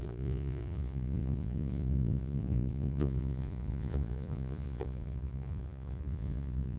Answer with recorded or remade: remade